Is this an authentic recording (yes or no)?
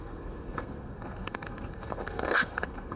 no